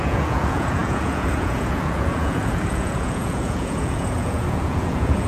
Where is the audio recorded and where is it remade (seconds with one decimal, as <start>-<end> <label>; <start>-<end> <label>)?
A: 0.0-5.3 remade